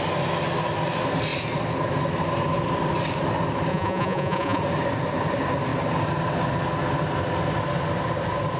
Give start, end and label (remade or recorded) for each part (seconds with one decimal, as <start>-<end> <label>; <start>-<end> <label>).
0.0-3.7 recorded; 3.7-4.6 remade; 4.6-8.6 recorded